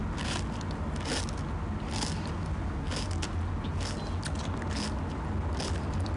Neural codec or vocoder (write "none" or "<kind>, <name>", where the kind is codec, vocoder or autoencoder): none